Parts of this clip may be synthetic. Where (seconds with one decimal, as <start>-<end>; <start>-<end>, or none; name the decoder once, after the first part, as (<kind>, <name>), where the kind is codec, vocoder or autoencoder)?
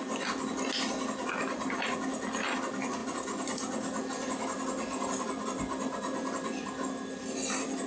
none